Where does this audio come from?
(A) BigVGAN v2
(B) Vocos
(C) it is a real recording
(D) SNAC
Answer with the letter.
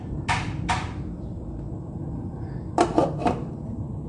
A